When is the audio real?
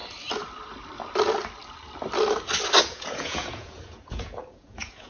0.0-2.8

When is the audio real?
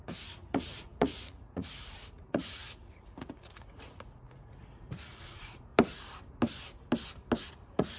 5.7-7.5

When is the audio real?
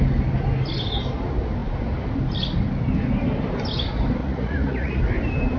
0.0-4.2; 5.0-5.6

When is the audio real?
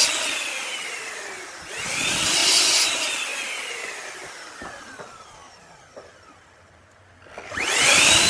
0.0-2.4; 2.9-8.3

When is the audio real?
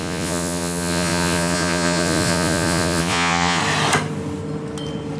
3.6-5.2